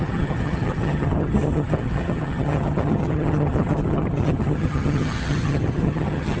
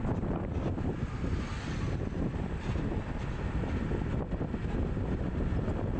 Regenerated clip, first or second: first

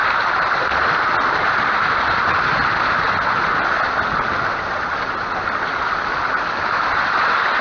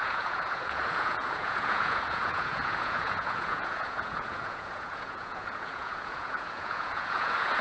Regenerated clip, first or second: second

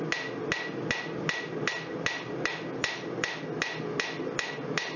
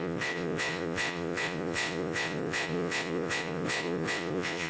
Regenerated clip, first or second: second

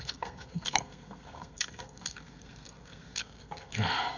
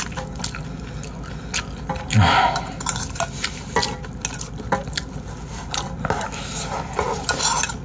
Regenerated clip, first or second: first